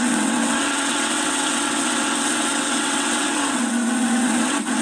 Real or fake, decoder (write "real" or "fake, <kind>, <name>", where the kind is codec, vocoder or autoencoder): fake, vocoder, WaveNeXt